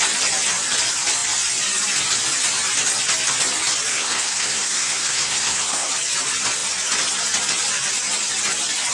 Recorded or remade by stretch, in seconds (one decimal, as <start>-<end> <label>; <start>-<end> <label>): 0.0-3.9 recorded; 3.9-5.9 remade; 5.9-8.9 recorded